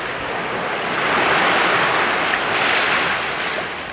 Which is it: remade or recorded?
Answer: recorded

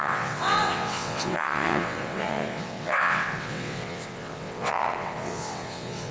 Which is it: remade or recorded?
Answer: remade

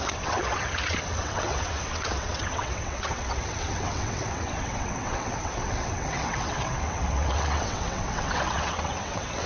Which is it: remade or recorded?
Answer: remade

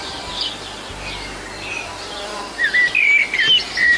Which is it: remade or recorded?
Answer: recorded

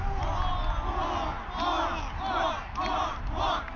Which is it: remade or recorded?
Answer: recorded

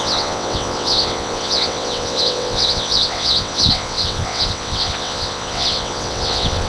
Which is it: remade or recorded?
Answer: remade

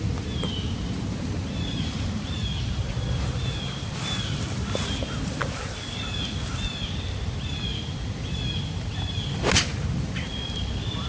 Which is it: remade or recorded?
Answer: recorded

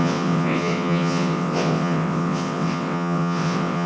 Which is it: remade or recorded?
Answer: remade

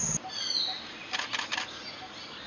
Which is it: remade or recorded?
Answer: recorded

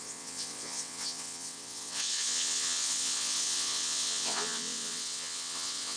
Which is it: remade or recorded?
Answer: remade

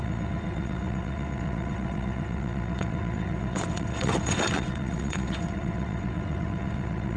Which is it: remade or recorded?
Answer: remade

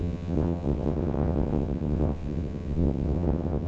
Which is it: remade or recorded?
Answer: remade